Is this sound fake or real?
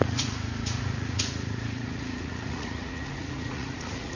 fake